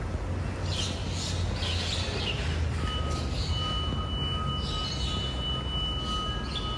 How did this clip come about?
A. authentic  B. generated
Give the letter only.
A